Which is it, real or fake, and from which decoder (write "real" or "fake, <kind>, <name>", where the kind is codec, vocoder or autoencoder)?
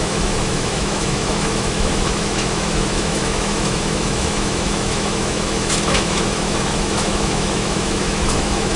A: fake, autoencoder, DAC-VAE